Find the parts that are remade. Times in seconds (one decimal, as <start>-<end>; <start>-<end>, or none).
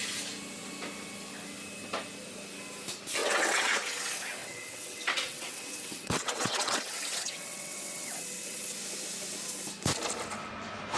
3.2-4.0; 4.4-8.8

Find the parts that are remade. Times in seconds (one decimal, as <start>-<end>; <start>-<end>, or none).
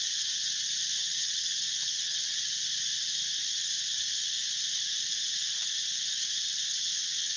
1.0-2.3; 6.9-7.4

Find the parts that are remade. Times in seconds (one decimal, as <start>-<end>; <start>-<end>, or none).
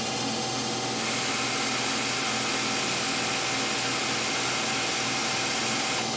none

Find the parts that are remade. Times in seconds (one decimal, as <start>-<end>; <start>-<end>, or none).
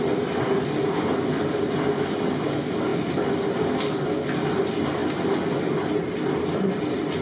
none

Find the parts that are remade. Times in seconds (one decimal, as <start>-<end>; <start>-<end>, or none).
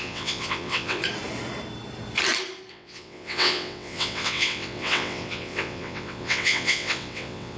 0.0-1.0; 2.7-7.6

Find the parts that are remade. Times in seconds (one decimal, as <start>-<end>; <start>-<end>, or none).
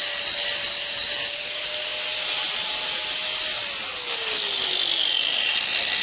none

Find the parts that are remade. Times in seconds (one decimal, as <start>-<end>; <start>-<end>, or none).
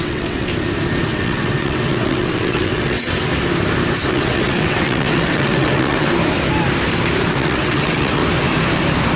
0.0-0.5; 1.1-3.3; 4.1-6.1; 7.3-8.2